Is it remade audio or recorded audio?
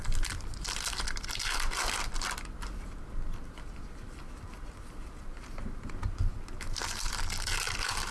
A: recorded